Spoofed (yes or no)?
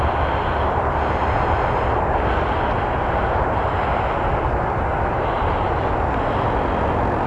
no